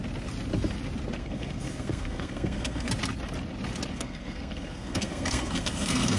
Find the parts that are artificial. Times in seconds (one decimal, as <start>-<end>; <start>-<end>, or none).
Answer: 1.2-2.9; 3.9-6.2